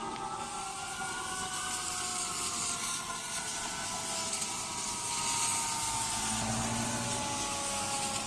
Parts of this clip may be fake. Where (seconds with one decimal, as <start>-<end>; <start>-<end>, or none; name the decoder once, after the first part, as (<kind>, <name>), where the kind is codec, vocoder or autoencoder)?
none